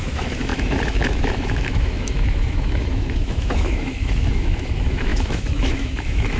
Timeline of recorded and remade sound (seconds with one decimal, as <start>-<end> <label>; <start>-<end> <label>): 0.0-6.4 remade